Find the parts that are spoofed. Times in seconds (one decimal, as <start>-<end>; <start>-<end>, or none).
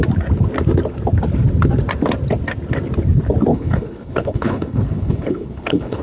3.5-6.0